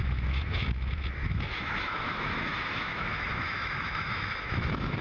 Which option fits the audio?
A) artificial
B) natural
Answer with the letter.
A